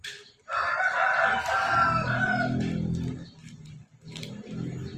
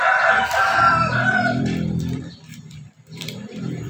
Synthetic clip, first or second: second